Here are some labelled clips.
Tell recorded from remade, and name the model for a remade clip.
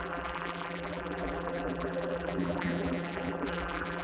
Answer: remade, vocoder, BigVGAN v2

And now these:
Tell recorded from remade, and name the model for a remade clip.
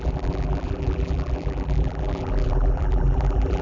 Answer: remade, vocoder, BigVGAN v2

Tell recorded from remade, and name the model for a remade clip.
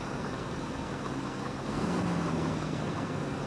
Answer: remade, codec, SNAC